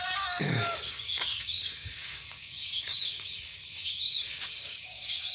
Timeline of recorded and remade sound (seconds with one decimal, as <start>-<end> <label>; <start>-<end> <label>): 0.0-5.3 remade

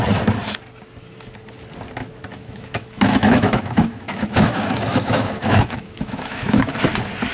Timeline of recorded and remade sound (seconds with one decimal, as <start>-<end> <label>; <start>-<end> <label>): 0.0-2.3 recorded; 2.3-6.7 remade; 6.7-7.3 recorded

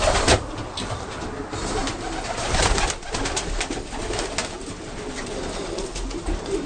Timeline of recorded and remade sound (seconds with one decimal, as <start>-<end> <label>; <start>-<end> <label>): 0.0-6.7 recorded

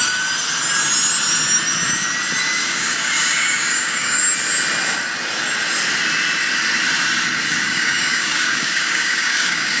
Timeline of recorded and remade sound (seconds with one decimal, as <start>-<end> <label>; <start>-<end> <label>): 0.0-2.6 recorded; 2.6-4.2 remade; 4.2-7.5 recorded; 7.5-9.8 remade